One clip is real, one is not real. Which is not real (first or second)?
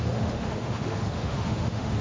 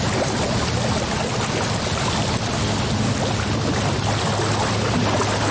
first